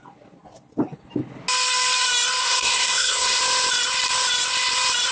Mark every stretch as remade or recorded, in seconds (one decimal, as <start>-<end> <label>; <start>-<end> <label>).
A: 0.0-2.4 recorded; 2.4-3.4 remade; 3.4-5.1 recorded